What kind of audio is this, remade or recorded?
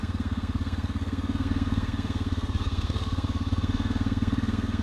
remade